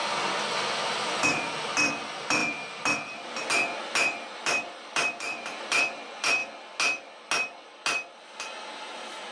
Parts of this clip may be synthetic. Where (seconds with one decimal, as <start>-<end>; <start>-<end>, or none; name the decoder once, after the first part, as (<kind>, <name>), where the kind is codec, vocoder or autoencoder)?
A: 0.5-6.4 (vocoder, BigVGAN v2)